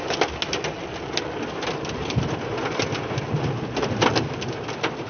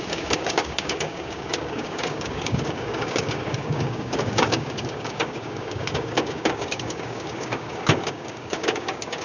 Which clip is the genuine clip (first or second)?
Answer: first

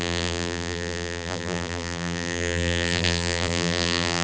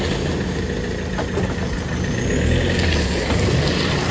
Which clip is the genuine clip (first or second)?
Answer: second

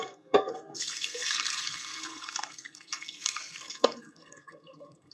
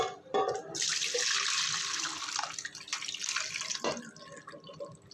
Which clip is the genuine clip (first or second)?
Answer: second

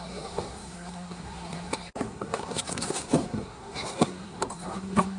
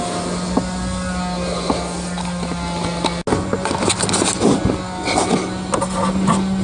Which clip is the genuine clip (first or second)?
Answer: second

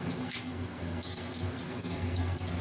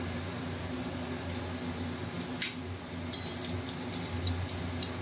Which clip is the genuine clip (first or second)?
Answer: second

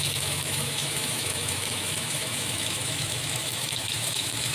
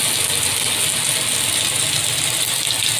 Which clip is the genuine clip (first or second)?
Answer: second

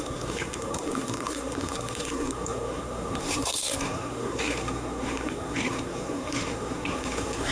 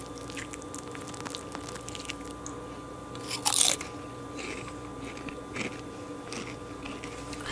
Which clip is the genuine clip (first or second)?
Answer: second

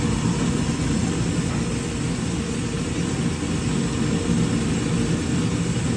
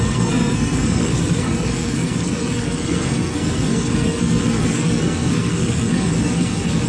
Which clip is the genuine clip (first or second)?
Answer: first